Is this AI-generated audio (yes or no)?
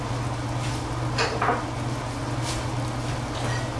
no